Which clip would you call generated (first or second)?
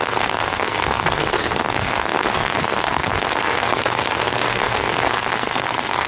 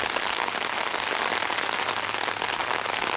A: first